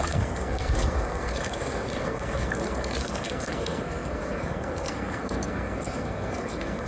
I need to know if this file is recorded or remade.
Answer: remade